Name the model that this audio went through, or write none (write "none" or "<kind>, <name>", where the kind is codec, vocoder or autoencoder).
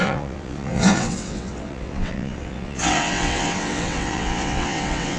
vocoder, WaveNeXt